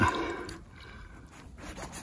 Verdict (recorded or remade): recorded